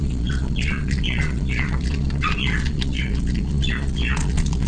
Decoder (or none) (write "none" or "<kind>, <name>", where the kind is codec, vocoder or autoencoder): vocoder, Vocos